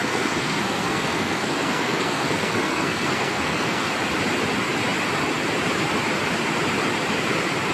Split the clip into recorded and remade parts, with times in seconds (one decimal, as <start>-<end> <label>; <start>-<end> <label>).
0.0-3.9 remade; 3.9-7.7 recorded